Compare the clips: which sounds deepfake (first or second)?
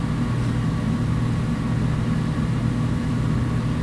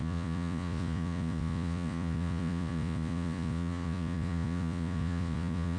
second